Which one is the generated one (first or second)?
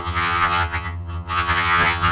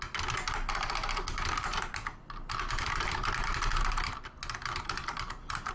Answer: first